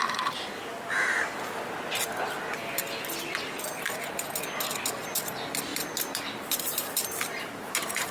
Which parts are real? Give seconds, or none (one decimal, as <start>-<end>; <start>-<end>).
0.0-8.1